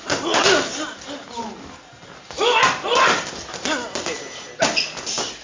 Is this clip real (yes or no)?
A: yes